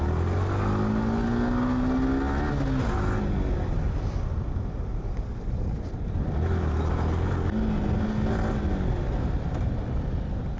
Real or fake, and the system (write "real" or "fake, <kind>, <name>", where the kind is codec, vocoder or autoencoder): real